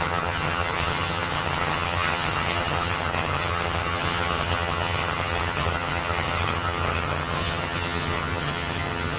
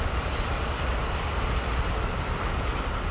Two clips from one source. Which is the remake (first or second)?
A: first